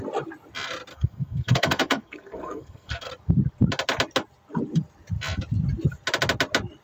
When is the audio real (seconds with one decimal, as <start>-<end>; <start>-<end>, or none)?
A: 0.0-0.9; 3.1-6.8